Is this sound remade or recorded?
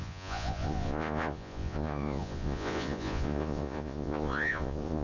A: remade